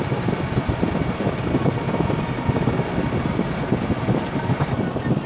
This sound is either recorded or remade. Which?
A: recorded